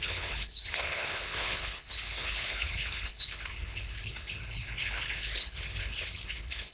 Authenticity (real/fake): fake